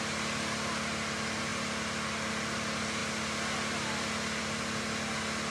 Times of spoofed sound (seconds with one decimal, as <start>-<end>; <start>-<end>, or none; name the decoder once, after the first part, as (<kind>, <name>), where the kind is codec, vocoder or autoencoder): none